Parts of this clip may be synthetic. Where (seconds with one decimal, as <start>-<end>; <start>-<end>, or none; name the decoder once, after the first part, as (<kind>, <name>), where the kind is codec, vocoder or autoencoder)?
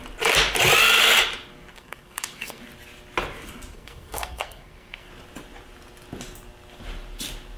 1.7-2.6 (codec, SNAC); 3.7-5.1